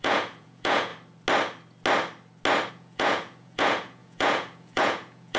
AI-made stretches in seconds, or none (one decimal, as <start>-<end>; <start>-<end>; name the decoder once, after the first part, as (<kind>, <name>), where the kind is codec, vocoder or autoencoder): 0.0-0.9 (vocoder, Vocos); 2.7-5.4